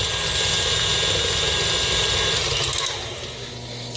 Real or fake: real